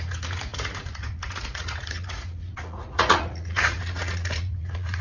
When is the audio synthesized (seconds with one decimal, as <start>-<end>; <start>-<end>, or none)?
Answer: 0.0-5.0